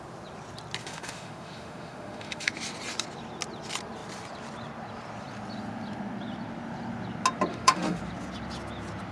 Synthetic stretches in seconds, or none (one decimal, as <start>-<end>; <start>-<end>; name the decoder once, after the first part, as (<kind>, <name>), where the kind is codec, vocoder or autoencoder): 0.8-2.5 (autoencoder, DAC-VAE); 7.5-8.0